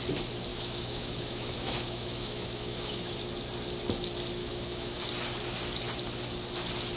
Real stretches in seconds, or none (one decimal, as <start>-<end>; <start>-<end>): 0.0-0.5; 3.1-4.4; 5.0-7.0

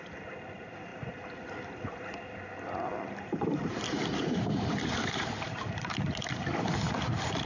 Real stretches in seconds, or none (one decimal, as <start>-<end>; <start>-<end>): 0.0-0.9; 2.1-2.9; 6.7-7.5

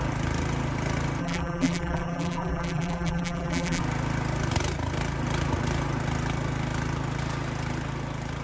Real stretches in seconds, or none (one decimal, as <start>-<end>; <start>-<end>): 0.0-1.2; 3.8-8.4

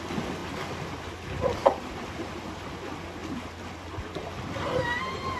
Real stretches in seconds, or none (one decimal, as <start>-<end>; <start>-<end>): 0.0-1.6; 2.4-5.4

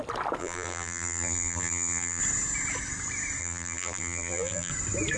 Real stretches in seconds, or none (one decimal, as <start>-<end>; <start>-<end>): 0.0-0.4; 2.2-3.4; 4.7-5.2